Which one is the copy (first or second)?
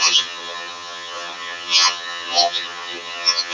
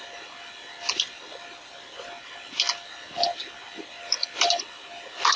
first